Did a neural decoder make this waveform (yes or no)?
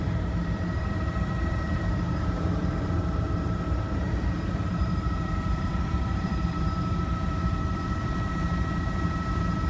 yes